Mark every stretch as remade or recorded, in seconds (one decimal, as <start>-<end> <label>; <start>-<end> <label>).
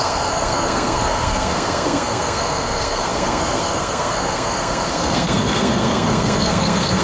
0.0-7.0 remade